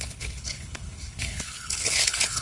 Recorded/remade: remade